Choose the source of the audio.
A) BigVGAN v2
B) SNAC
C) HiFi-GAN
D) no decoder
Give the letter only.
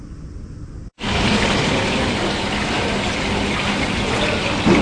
D